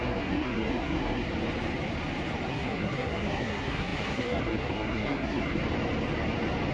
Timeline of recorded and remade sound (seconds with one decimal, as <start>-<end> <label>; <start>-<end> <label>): 0.0-1.3 remade; 1.3-2.5 recorded; 2.5-5.6 remade; 5.6-6.7 recorded